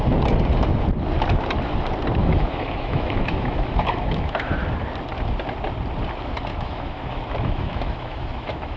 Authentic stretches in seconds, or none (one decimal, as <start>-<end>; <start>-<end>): 0.0-2.2; 4.5-6.5